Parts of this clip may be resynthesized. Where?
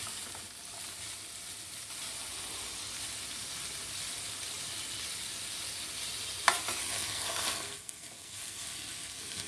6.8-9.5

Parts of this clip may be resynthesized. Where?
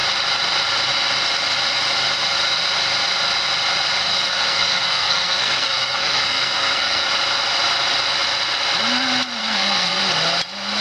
4.1-7.1; 9.4-10.0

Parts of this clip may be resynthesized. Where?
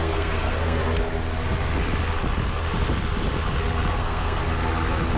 0.0-0.8; 3.9-4.4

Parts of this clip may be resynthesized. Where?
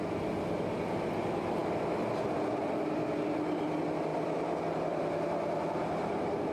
none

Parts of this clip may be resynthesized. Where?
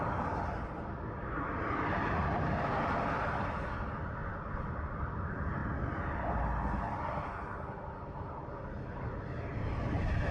none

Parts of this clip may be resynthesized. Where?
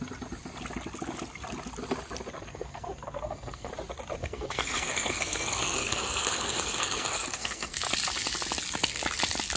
2.5-3.7; 4.2-7.9